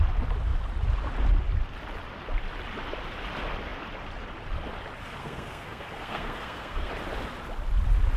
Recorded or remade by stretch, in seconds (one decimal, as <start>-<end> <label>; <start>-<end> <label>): 0.0-5.2 recorded; 5.2-6.9 remade; 6.9-8.2 recorded